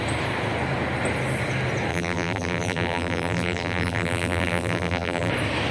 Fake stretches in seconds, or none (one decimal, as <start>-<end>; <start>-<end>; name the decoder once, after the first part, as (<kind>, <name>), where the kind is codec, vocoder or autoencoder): 1.9-5.3 (vocoder, BigVGAN v2)